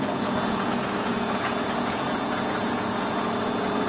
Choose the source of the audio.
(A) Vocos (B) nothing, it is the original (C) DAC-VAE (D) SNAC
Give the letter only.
A